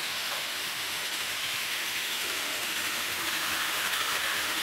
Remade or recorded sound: remade